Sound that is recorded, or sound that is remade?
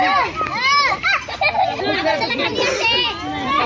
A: recorded